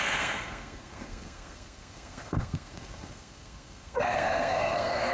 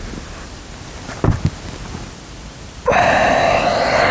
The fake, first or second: first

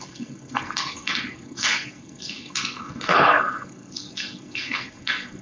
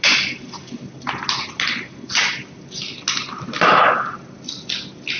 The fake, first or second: first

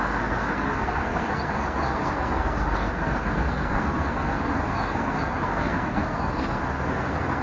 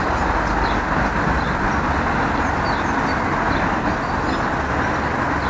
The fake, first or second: first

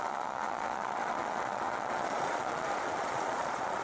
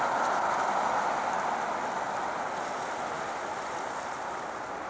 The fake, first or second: first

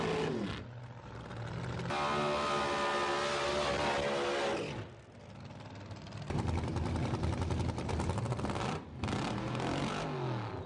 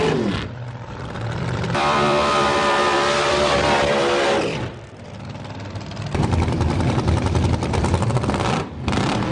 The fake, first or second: second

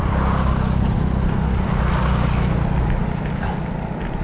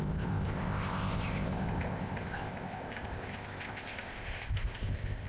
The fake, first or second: second